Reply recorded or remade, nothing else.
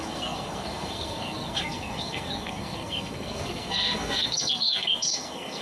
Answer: remade